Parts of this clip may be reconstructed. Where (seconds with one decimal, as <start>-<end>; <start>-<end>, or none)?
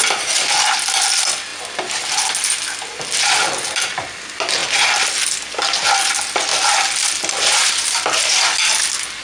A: 6.5-8.2